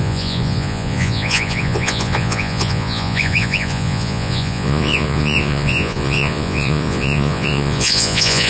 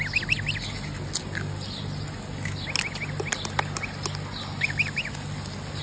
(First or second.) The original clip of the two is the second